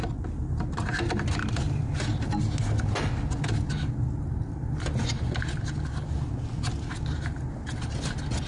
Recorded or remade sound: recorded